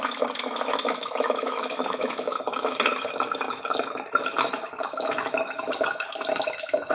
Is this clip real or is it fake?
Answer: fake